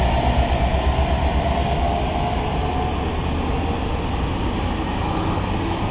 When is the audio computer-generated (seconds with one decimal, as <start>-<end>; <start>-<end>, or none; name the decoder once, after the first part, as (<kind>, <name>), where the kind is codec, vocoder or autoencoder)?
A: none